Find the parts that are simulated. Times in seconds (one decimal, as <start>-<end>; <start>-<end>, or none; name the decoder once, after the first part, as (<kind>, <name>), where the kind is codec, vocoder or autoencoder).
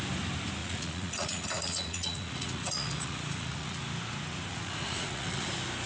0.6-3.8 (vocoder, Vocos); 4.5-5.5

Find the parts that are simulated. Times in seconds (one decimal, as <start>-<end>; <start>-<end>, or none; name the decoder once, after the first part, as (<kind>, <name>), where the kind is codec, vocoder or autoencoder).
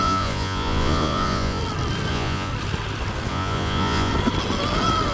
0.0-1.6 (vocoder, Vocos); 2.1-2.5; 3.3-4.1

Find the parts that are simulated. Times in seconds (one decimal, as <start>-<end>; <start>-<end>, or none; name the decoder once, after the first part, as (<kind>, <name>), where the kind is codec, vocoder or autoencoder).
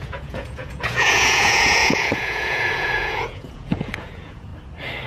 0.0-4.5 (vocoder, Vocos)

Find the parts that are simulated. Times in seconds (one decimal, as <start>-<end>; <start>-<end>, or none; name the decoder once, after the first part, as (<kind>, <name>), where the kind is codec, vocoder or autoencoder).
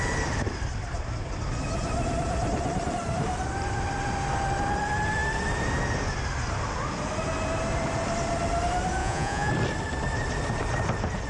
9.0-9.5 (vocoder, Vocos)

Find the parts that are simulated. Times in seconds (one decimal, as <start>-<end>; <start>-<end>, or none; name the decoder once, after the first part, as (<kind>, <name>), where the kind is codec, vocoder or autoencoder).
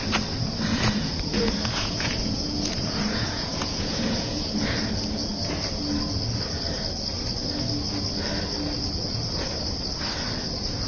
0.7-4.5 (vocoder, Vocos)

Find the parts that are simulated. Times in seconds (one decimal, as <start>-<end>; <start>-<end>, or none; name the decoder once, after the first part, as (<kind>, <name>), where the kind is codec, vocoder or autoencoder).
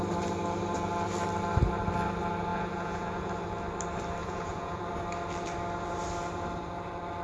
2.5-3.3 (vocoder, Vocos); 4.2-4.8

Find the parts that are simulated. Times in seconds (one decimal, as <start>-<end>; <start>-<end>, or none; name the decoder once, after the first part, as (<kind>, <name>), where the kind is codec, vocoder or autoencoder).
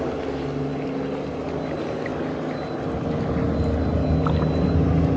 none